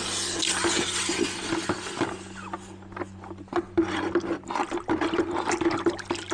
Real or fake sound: real